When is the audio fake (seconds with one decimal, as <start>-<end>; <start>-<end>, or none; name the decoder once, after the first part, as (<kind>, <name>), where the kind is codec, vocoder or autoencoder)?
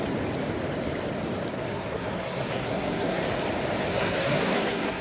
1.5-3.2 (codec, SNAC); 3.9-5.0